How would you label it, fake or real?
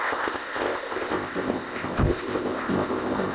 fake